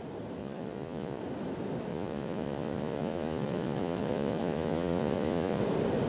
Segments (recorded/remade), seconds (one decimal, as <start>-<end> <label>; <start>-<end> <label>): 0.0-0.4 recorded; 0.4-1.2 remade; 1.2-1.9 recorded; 1.9-5.6 remade; 5.6-6.1 recorded